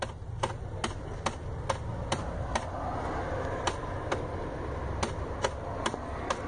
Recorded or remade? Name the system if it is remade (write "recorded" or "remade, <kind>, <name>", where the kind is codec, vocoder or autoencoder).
recorded